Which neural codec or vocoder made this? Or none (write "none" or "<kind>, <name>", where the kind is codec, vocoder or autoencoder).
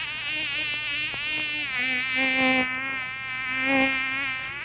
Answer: none